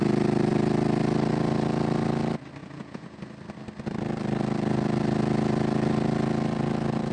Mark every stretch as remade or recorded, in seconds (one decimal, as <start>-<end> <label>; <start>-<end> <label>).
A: 0.0-2.6 recorded; 2.6-3.2 remade; 3.2-7.1 recorded